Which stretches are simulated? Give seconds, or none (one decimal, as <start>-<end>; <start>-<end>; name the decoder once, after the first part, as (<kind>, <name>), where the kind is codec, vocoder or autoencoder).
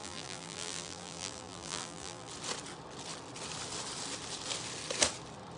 0.0-2.3 (vocoder, BigVGAN v2)